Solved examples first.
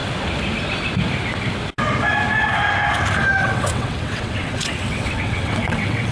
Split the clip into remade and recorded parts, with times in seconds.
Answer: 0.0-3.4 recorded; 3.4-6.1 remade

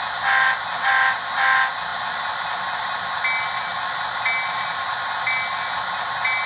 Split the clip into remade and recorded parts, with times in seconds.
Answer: 0.0-6.5 recorded